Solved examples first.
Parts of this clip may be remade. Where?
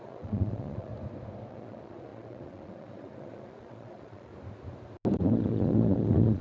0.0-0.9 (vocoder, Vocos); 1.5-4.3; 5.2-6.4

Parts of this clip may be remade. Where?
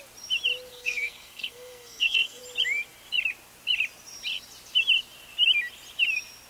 0.7-2.4 (codec, SNAC)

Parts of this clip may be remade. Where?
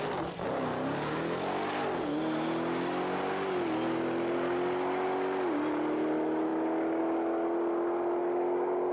none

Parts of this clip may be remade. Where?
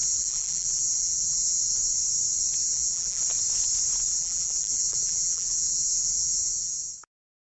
0.0-1.6 (vocoder, BigVGAN v2); 2.6-3.2; 4.1-6.9